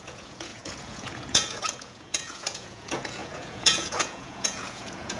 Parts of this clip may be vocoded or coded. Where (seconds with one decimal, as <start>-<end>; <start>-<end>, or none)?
0.0-5.2